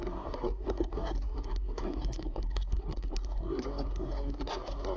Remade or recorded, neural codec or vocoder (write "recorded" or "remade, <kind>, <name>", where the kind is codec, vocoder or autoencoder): remade, codec, SNAC